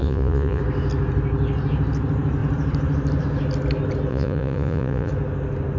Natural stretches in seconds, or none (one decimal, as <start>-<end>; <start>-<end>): 0.6-4.1; 5.1-5.8